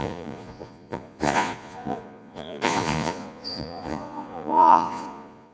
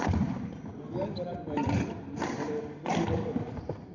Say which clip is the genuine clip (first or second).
second